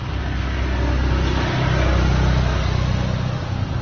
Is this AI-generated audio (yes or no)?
no